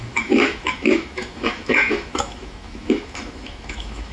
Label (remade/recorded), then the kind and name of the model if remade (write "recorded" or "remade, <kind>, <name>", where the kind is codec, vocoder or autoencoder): remade, autoencoder, DAC-VAE